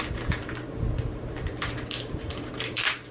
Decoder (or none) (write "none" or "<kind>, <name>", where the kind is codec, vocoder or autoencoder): vocoder, BigVGAN v2